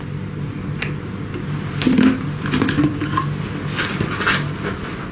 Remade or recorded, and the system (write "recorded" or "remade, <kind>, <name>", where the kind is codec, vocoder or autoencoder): recorded